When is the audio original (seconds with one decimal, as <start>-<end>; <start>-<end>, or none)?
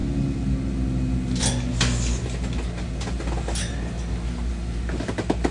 0.0-5.5